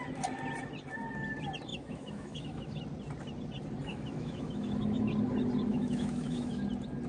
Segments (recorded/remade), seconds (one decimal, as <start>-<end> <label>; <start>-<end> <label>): 0.0-1.7 recorded; 1.7-2.8 remade; 2.8-3.9 recorded; 3.9-5.1 remade; 5.1-5.7 recorded; 5.7-6.6 remade; 6.6-7.1 recorded